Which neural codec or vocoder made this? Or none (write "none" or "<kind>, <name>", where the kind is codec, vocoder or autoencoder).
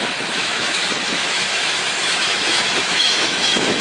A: autoencoder, DAC-VAE